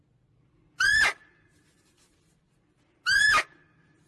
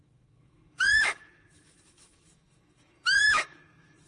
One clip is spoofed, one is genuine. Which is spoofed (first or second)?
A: second